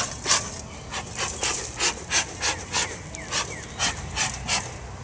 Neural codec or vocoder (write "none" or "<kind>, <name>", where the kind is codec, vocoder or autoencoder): none